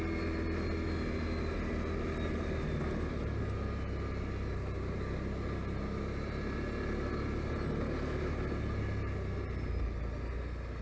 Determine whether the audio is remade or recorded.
recorded